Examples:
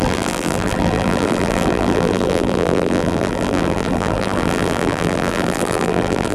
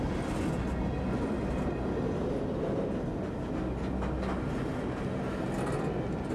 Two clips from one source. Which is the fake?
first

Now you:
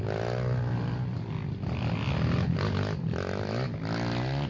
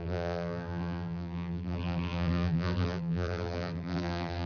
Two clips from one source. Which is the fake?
second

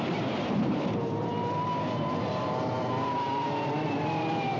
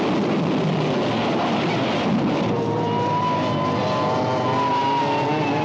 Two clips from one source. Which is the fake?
first